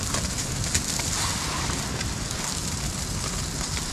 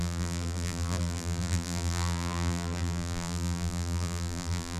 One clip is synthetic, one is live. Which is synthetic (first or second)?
second